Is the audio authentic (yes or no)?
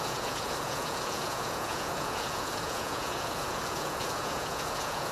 no